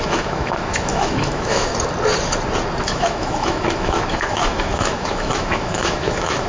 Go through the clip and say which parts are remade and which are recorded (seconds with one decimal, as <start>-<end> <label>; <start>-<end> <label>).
0.0-1.7 remade; 1.7-2.8 recorded; 2.8-6.5 remade